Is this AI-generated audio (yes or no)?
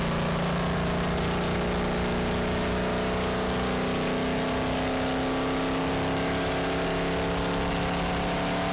no